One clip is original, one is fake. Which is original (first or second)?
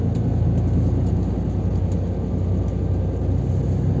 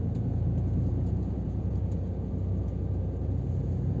first